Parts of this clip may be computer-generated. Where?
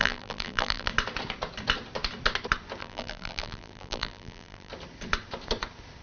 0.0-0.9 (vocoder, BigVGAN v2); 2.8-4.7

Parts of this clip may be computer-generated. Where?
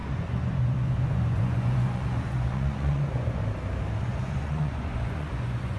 0.0-3.4 (vocoder, Vocos); 4.0-5.8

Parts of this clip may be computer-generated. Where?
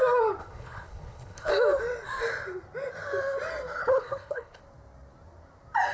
0.4-1.5 (codec, HILCodec); 3.8-4.6